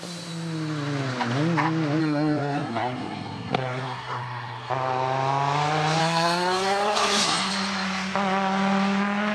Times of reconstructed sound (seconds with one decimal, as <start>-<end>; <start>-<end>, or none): 2.0-4.7; 6.0-7.5